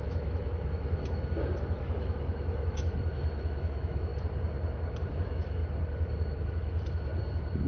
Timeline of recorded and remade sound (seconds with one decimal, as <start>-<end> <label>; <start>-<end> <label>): 0.0-4.1 remade; 4.1-5.1 recorded; 5.1-5.6 remade; 5.6-6.4 recorded; 6.4-7.1 remade; 7.1-7.7 recorded